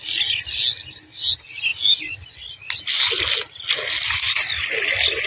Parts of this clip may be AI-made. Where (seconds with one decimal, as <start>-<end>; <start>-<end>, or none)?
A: none